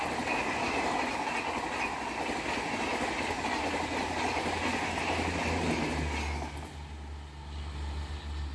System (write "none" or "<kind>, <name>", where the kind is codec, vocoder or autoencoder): none